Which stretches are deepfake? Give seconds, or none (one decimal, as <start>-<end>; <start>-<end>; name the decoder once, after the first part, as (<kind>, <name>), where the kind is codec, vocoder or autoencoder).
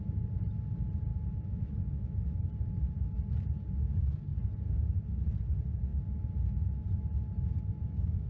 1.1-2.4 (autoencoder, DAC-VAE)